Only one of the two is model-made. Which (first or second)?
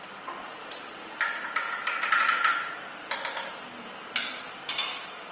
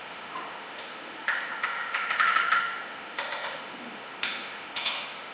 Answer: second